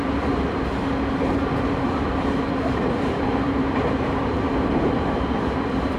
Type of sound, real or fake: fake